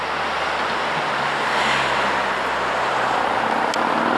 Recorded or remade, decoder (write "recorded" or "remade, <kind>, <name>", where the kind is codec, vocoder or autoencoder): recorded